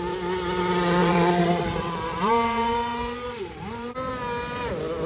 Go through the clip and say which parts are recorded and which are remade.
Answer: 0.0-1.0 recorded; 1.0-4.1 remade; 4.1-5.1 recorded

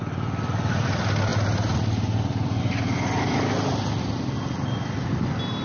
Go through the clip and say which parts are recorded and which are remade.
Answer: 0.0-5.6 recorded

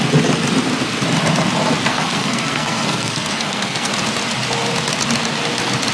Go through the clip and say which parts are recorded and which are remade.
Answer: 0.0-1.9 recorded; 1.9-3.9 remade; 3.9-5.9 recorded

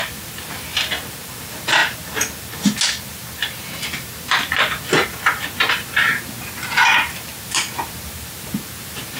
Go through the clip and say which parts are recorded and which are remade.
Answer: 0.0-1.8 remade; 1.8-5.7 recorded; 5.7-9.2 remade

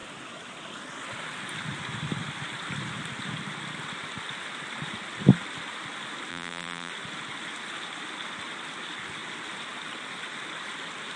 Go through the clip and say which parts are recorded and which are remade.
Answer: 0.0-6.3 recorded; 6.3-6.9 remade; 6.9-11.2 recorded